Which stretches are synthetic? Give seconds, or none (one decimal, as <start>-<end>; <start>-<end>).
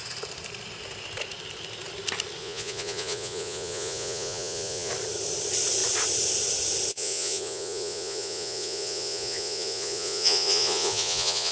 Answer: 2.4-4.9; 6.9-11.5